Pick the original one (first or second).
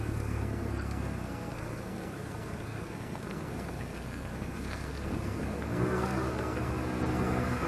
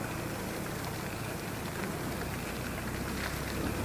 second